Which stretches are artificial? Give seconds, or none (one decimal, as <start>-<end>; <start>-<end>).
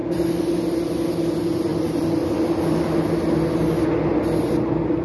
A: 0.0-0.5; 1.7-2.6; 4.1-4.6